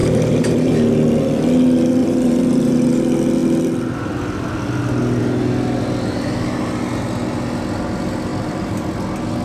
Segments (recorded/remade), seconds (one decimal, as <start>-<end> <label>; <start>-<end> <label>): 0.0-0.7 remade; 0.7-2.0 recorded; 2.0-2.9 remade; 2.9-8.3 recorded; 8.3-8.9 remade; 8.9-9.4 recorded